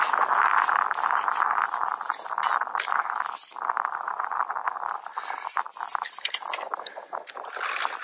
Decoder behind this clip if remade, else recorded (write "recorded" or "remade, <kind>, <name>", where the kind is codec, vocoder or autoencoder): recorded